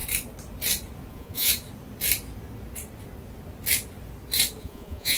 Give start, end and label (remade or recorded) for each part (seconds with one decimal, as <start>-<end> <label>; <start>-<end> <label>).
0.0-1.1 recorded; 1.1-1.5 remade; 1.5-4.6 recorded; 4.6-5.2 remade